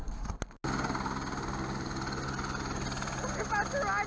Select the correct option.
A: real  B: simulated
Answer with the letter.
A